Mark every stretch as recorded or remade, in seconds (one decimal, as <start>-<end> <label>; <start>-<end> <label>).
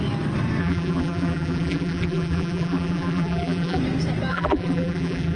0.0-0.6 recorded; 0.6-3.8 remade; 3.8-4.3 recorded; 4.3-5.4 remade